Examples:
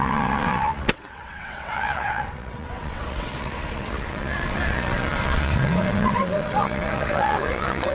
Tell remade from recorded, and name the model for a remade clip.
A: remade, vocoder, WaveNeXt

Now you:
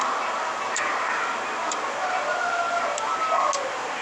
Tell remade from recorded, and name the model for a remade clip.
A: recorded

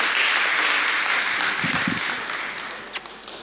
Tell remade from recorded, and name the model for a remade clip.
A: recorded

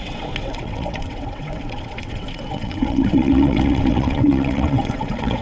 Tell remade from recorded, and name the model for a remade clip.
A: remade, vocoder, WaveNeXt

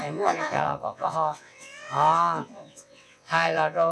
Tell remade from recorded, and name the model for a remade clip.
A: remade, vocoder, WaveNeXt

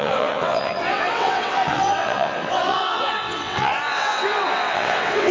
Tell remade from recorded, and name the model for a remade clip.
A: remade, vocoder, WaveNeXt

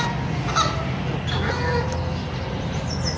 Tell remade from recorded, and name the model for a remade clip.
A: recorded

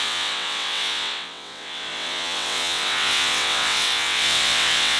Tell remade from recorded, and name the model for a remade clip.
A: remade, vocoder, WaveNeXt